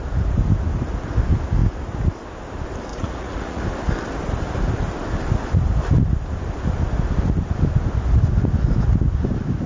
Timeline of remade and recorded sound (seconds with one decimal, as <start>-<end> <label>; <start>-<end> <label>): 0.0-2.9 recorded; 2.9-3.6 remade; 3.6-9.7 recorded